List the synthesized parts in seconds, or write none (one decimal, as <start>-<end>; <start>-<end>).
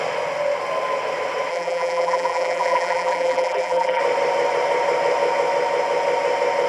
1.5-4.0